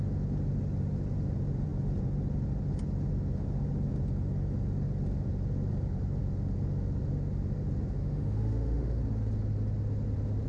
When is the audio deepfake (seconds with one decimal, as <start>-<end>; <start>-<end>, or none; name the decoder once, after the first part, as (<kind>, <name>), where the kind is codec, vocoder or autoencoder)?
8.0-9.0 (autoencoder, DAC-VAE)